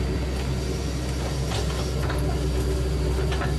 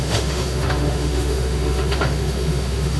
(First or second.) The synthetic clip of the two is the second